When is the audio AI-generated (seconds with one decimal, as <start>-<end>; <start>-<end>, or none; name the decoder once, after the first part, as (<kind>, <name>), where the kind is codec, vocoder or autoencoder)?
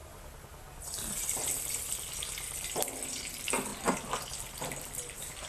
none